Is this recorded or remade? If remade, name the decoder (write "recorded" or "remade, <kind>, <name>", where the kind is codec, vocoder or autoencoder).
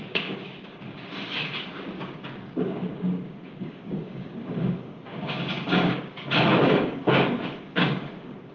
remade, codec, DAC